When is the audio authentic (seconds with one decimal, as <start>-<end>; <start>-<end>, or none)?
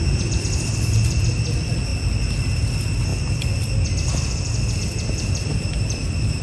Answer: 1.9-2.6; 3.1-5.4